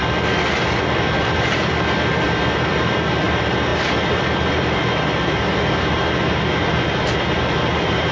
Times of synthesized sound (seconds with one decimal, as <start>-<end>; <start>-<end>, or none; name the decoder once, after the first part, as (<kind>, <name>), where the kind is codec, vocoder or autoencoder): 0.8-8.1 (vocoder, BigVGAN v2)